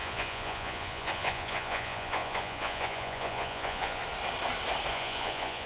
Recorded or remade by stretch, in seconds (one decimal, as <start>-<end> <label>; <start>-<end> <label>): 0.0-4.0 remade; 4.0-4.9 recorded; 4.9-5.7 remade

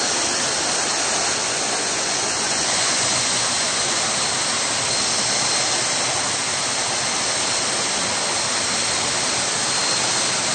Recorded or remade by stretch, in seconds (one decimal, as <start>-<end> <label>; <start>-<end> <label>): 0.0-1.4 recorded; 1.4-4.0 remade; 4.0-10.5 recorded

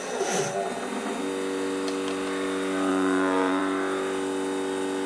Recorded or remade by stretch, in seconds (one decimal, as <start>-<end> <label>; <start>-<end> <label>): 0.0-2.9 recorded; 2.9-3.6 remade; 3.6-5.1 recorded

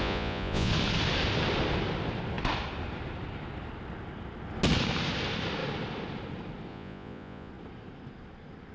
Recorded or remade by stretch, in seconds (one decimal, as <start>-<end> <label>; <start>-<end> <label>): 0.0-0.7 remade; 0.7-6.7 recorded; 6.7-7.5 remade; 7.5-8.7 recorded

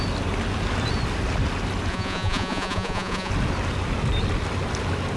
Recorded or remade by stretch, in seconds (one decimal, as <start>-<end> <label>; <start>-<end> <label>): 0.0-1.9 recorded; 1.9-3.3 remade; 3.3-5.2 recorded